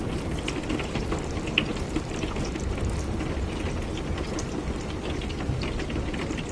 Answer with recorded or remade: recorded